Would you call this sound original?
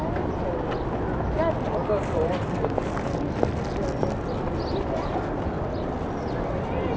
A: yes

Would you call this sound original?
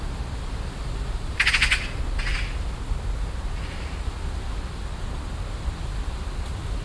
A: yes